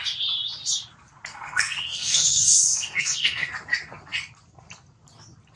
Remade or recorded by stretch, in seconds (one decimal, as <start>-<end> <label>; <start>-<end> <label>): 0.0-1.3 recorded; 1.3-3.5 remade; 3.5-5.6 recorded